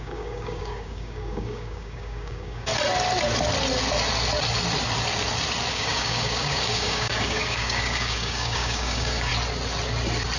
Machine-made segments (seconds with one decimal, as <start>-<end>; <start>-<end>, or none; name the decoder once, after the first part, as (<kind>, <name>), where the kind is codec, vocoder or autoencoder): 0.0-2.7 (codec, DAC); 5.7-9.3